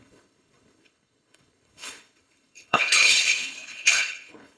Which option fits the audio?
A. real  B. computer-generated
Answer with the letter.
B